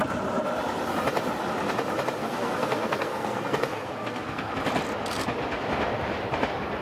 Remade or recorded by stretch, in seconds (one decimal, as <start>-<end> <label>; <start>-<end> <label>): 0.0-2.2 recorded; 2.2-4.5 remade; 4.5-6.8 recorded